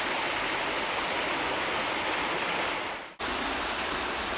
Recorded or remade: recorded